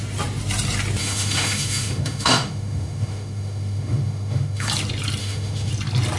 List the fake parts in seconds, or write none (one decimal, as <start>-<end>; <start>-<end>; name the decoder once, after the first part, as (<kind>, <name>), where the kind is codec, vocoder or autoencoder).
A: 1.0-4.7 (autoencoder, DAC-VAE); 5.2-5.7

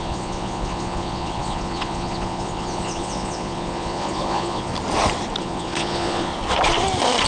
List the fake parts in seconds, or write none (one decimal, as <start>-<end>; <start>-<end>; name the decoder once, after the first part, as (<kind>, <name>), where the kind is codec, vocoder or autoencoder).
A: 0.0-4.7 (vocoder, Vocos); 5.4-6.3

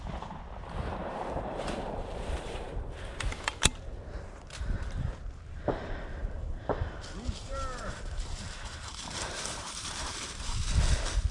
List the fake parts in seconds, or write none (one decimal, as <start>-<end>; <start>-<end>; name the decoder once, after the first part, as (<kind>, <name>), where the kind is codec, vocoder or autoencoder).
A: 1.0-2.7 (vocoder, BigVGAN v2); 6.2-7.0; 7.4-10.4

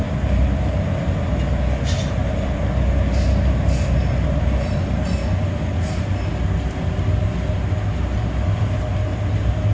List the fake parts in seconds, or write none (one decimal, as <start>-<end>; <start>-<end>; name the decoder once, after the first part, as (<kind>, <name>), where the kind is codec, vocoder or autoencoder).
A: none

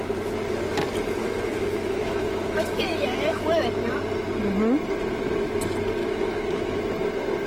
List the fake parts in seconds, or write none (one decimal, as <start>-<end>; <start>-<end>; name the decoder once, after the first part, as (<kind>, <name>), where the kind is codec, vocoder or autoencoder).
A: 1.2-3.6 (autoencoder, DAC-VAE); 6.0-6.8

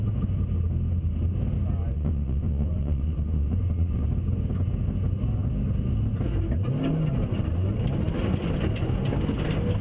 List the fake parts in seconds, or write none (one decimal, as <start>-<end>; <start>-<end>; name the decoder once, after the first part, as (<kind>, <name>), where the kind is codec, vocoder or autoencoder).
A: 1.9-4.1 (vocoder, Vocos)